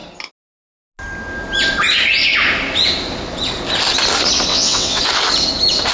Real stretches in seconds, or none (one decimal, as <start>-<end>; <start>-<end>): 0.0-4.5; 5.0-5.9